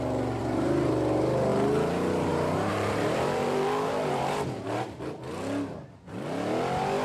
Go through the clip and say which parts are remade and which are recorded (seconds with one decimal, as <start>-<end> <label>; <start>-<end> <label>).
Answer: 0.0-0.4 recorded; 0.4-0.9 remade; 0.9-2.7 recorded; 2.7-5.2 remade; 5.2-7.0 recorded